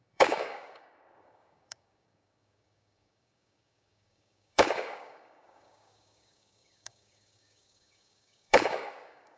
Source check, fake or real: fake